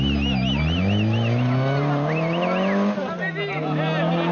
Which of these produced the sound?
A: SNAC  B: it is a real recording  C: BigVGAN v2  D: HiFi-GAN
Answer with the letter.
B